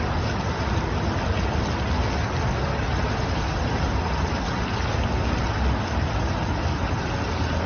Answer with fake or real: real